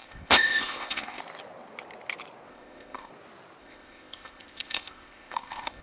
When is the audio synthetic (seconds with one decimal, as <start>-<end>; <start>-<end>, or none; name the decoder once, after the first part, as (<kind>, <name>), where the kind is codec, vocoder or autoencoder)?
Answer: 0.0-1.2 (codec, ZipCodec); 2.5-3.1; 3.6-5.8